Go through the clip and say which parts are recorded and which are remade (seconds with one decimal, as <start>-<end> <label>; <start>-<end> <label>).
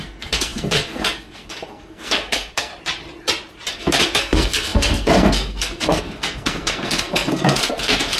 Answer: 0.0-2.7 remade; 2.7-3.7 recorded; 3.7-8.2 remade